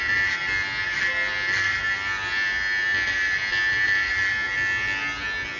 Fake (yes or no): no